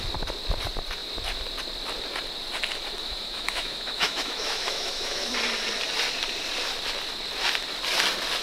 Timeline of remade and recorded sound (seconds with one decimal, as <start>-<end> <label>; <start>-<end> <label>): 0.0-3.0 recorded; 3.0-5.3 remade; 5.3-8.4 recorded